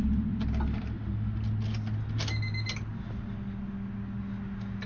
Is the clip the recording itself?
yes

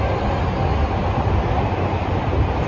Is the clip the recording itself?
yes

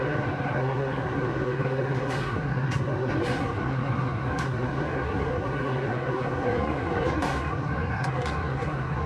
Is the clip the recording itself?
no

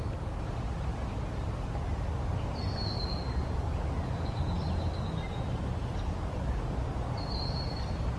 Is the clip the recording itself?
yes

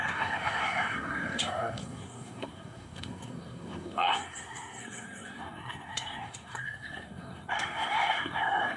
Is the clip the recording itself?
no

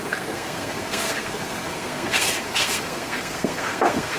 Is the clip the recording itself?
no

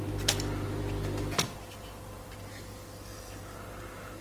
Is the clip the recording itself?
yes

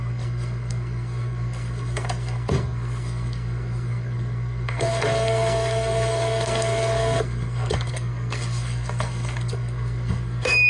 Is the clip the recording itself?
no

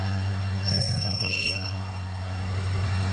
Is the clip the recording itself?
no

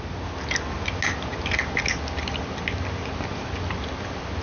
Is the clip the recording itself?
yes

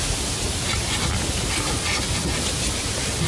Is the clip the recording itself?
yes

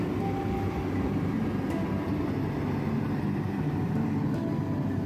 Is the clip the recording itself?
yes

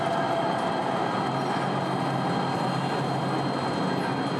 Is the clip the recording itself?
yes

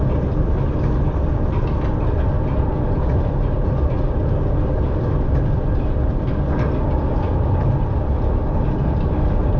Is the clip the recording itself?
yes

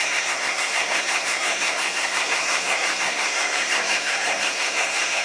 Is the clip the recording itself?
no